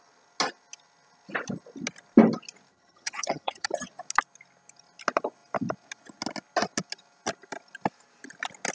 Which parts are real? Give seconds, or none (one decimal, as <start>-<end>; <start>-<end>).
0.0-2.7; 3.9-8.7

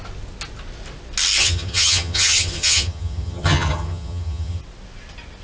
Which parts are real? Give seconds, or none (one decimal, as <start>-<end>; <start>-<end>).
0.0-1.4; 4.6-5.4